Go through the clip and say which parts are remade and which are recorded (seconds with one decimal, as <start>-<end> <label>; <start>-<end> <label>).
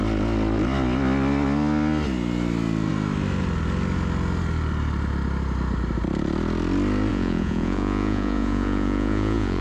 0.0-7.1 recorded; 7.1-9.6 remade